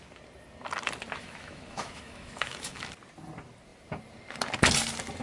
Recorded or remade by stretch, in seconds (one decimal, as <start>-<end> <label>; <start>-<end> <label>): 0.0-1.2 recorded; 1.2-2.8 remade; 2.8-5.2 recorded